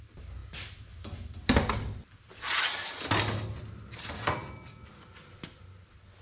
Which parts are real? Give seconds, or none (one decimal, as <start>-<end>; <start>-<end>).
0.0-6.2